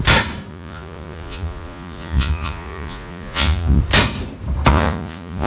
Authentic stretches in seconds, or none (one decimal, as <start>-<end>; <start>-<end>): 0.0-0.5; 3.8-4.7